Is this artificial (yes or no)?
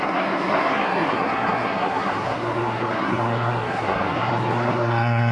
yes